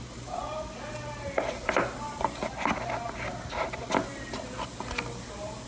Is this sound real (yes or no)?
yes